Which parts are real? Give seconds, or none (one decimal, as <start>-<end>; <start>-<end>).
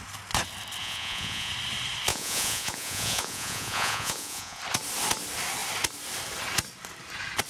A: 0.0-0.8; 1.5-2.1; 4.6-7.5